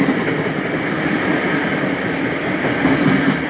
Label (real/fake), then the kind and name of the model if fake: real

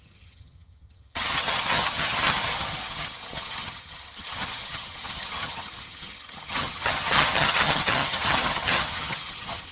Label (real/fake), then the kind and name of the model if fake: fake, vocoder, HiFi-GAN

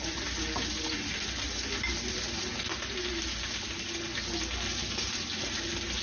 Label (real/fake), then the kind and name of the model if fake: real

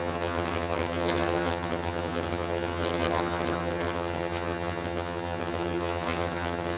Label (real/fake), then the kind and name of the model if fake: fake, vocoder, HiFi-GAN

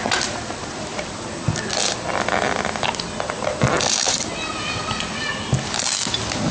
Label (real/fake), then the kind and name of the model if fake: real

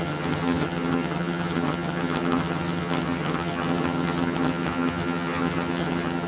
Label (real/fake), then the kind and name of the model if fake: fake, vocoder, HiFi-GAN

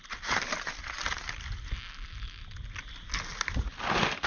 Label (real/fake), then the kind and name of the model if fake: real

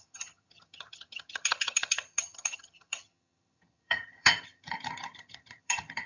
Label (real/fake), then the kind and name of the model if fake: fake, vocoder, HiFi-GAN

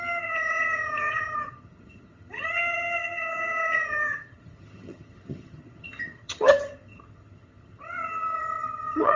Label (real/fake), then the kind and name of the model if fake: fake, vocoder, HiFi-GAN